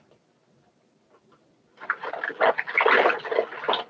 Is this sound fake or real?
real